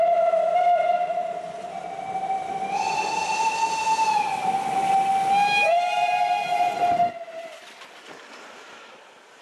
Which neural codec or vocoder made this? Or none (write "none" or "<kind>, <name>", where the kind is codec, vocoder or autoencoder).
none